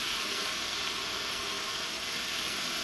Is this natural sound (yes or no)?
no